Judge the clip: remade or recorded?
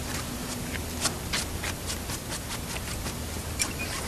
recorded